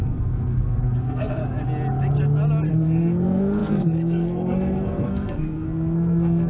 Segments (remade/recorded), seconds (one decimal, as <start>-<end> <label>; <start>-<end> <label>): 0.0-1.4 remade; 1.4-2.7 recorded; 2.7-6.5 remade